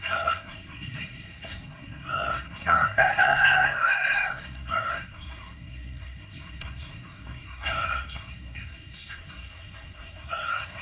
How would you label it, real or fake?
fake